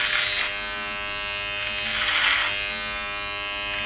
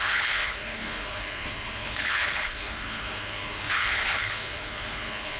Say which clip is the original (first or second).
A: first